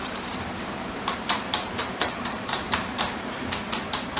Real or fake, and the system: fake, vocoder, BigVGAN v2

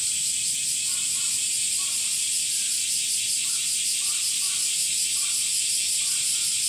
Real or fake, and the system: real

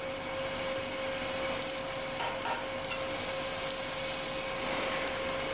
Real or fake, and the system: real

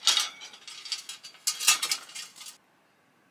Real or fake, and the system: real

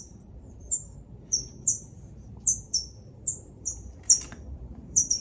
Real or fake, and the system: fake, vocoder, BigVGAN v2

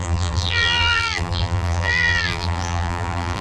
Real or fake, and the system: fake, vocoder, BigVGAN v2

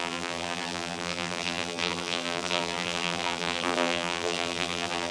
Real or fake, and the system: fake, vocoder, BigVGAN v2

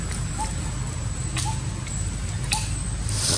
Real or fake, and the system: real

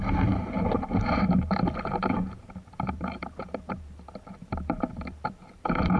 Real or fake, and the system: fake, vocoder, BigVGAN v2